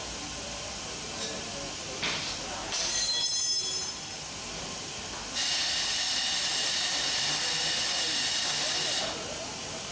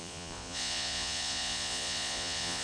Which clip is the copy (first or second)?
second